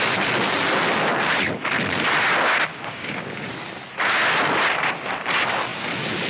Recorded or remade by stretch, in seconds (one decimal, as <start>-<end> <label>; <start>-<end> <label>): 0.0-2.7 recorded; 2.7-3.5 remade; 3.5-6.3 recorded